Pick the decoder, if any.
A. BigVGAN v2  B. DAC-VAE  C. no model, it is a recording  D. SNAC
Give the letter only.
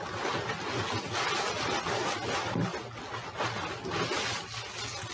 C